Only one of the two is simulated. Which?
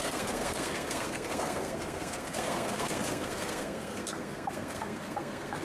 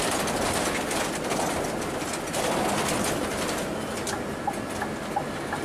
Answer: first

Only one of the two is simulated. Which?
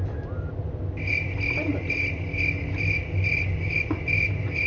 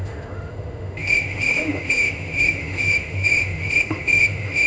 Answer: second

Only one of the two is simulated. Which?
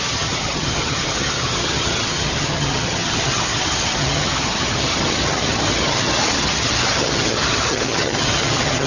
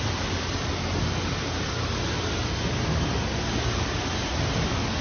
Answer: first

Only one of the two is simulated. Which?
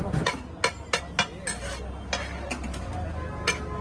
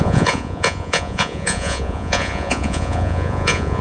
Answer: second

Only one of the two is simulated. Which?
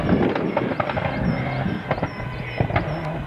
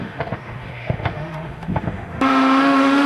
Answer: second